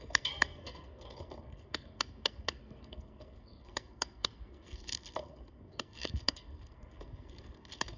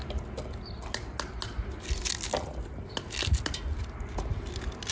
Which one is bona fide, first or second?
second